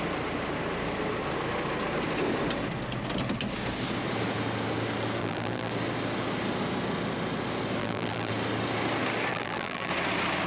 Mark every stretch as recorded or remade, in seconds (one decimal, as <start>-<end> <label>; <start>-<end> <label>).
0.0-5.2 recorded; 5.2-5.7 remade; 5.7-7.8 recorded; 7.8-8.3 remade; 8.3-9.3 recorded; 9.3-9.9 remade; 9.9-10.5 recorded